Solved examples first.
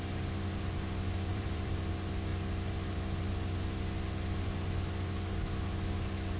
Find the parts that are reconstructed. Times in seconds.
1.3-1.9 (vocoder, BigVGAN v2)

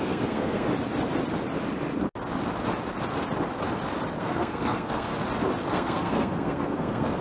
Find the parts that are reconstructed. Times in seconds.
0.0-0.7 (codec, SNAC); 4.2-5.1; 5.7-7.2

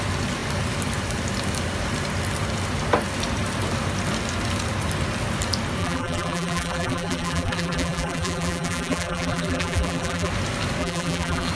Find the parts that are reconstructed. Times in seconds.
5.8-10.3 (vocoder, BigVGAN v2); 10.8-11.5

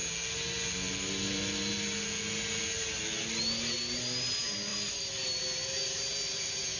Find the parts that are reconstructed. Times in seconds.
none

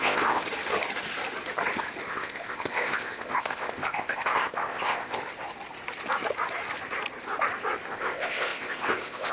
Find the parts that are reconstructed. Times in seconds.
0.0-0.4 (codec, ZipCodec); 2.1-5.2; 7.9-9.3